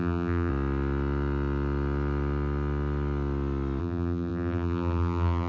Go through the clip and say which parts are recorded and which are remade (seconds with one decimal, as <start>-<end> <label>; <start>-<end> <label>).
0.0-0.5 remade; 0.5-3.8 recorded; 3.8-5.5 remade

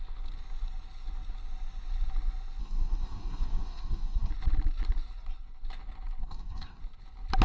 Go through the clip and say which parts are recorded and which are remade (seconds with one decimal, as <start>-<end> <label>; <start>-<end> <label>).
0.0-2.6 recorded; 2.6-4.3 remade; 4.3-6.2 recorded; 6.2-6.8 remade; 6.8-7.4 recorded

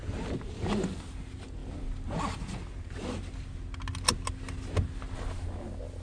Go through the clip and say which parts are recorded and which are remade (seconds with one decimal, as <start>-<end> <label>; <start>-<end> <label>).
0.0-6.0 recorded

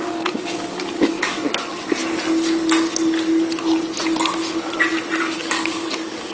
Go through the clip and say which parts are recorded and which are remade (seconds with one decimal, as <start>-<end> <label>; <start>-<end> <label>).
0.0-1.4 remade; 1.4-5.2 recorded; 5.2-6.3 remade

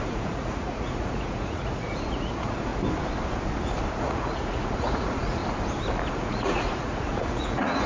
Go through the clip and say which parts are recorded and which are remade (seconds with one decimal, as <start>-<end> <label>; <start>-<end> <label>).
0.0-2.7 remade; 2.7-3.9 recorded; 3.9-5.4 remade; 5.4-6.1 recorded; 6.1-7.9 remade